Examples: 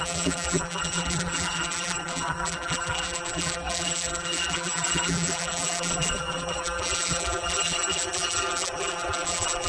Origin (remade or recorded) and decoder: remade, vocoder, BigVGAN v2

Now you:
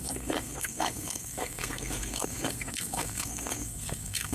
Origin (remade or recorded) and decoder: remade, codec, SNAC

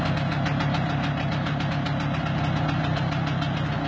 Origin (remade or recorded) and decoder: recorded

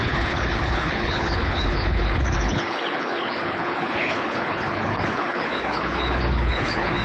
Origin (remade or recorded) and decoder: remade, codec, HILCodec